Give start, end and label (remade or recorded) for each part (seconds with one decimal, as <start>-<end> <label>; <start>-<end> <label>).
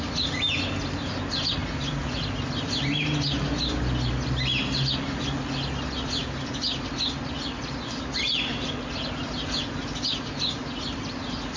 0.0-11.6 recorded